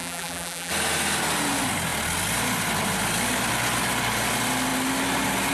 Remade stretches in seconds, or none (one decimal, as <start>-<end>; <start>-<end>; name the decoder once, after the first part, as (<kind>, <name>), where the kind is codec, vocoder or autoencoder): 0.0-0.7 (vocoder, BigVGAN v2)